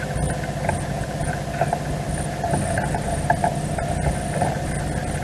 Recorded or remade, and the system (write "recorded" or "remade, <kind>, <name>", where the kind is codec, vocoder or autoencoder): recorded